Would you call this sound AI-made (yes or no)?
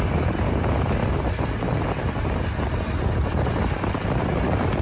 no